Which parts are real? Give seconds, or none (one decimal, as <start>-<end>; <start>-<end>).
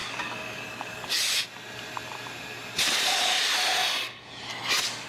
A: 1.2-5.1